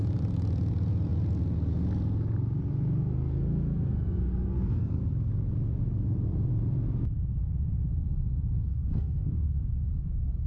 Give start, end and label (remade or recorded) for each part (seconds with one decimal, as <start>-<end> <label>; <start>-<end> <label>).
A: 0.0-3.0 recorded; 3.0-5.0 remade; 5.0-8.1 recorded; 8.1-9.9 remade; 9.9-10.5 recorded